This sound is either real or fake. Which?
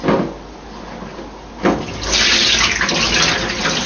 real